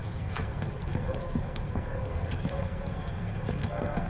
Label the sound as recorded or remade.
remade